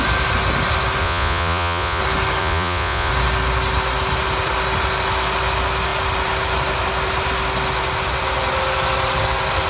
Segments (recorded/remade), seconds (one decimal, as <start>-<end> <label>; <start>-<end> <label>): 0.0-1.0 recorded; 1.0-2.0 remade; 2.0-2.4 recorded; 2.4-3.1 remade; 3.1-9.7 recorded